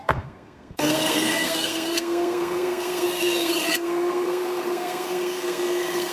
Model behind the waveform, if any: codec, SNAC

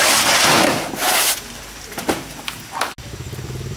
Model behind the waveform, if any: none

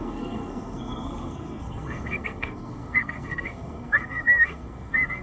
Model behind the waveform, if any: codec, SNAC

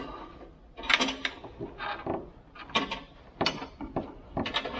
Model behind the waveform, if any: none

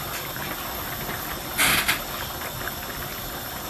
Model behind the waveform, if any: none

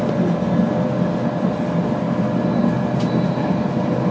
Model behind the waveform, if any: none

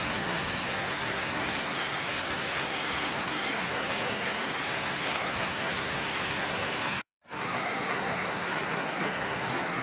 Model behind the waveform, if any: codec, SNAC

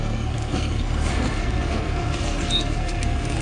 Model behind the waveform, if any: codec, SNAC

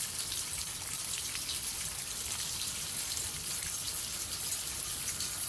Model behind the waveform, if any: none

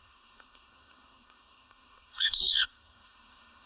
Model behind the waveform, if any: codec, SNAC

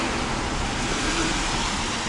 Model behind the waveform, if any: none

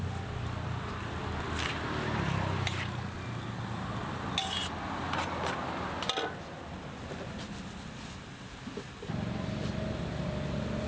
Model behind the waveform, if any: none